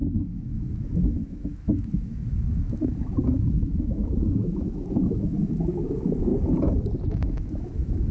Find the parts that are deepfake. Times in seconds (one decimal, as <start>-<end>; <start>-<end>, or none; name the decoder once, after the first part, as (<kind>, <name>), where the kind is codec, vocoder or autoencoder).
0.0-6.3 (autoencoder, DAC-VAE); 7.1-8.1